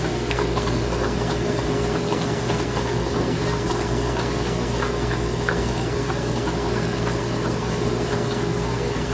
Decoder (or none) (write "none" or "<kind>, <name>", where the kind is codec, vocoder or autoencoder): codec, SNAC